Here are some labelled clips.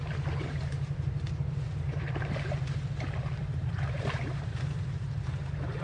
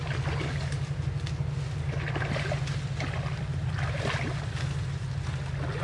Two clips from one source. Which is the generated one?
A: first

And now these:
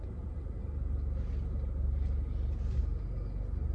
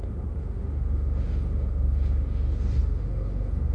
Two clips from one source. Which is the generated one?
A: second